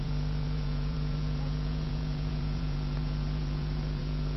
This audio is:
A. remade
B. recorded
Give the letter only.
A